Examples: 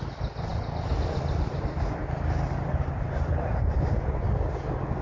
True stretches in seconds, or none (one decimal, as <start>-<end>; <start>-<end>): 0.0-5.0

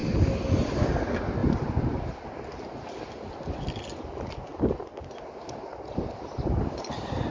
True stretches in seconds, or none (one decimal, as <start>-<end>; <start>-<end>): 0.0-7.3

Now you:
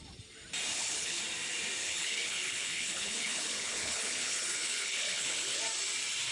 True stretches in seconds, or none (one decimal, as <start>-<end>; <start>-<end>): 0.0-0.7; 1.2-1.8; 5.6-6.3